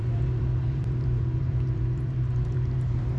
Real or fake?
fake